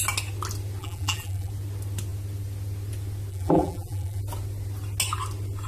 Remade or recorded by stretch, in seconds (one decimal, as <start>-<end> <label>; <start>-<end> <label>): 0.0-0.8 recorded; 0.8-1.5 remade; 1.5-3.3 recorded; 3.3-4.2 remade; 4.2-5.7 recorded